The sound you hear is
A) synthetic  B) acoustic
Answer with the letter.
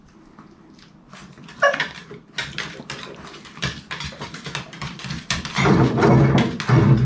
B